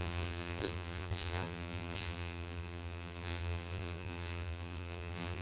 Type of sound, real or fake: fake